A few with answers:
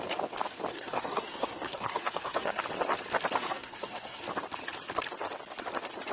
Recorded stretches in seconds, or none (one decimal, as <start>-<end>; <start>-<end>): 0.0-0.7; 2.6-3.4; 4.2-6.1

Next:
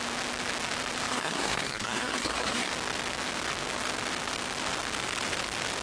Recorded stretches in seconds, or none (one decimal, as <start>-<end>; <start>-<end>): 0.0-1.1; 2.7-5.8

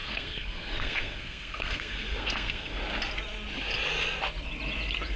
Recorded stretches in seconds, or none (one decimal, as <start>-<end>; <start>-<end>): 2.8-5.2